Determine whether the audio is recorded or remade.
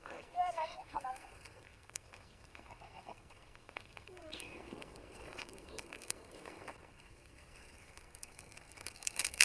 remade